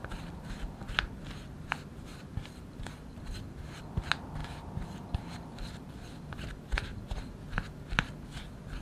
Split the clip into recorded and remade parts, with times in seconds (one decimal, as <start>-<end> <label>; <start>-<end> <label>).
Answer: 0.0-2.1 recorded; 2.1-2.8 remade; 2.8-8.8 recorded